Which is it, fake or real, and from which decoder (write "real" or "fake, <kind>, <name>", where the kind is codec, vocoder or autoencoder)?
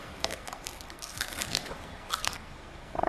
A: fake, codec, SNAC